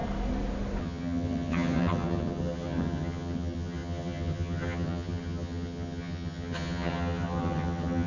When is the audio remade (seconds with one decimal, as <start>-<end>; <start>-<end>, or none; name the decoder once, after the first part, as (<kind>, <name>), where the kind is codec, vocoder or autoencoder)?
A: 0.8-8.1 (vocoder, HiFi-GAN)